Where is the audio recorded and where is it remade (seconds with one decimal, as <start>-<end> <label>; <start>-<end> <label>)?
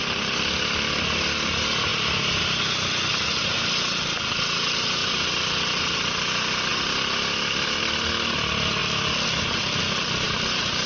0.0-5.0 recorded; 5.0-5.9 remade; 5.9-6.7 recorded; 6.7-7.8 remade; 7.8-10.9 recorded